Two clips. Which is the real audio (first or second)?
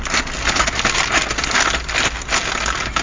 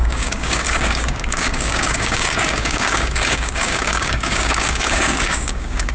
first